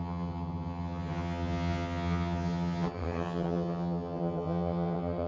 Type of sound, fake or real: fake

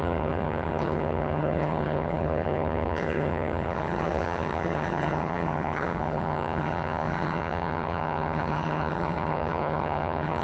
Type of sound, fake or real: fake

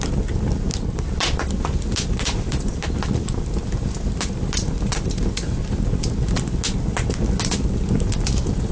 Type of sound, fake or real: real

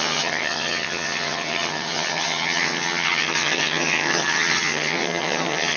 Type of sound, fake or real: fake